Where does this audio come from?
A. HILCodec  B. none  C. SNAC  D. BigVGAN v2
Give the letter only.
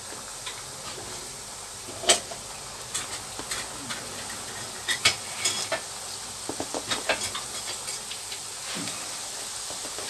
B